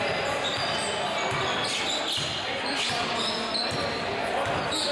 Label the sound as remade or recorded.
recorded